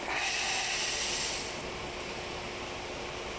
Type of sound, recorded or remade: recorded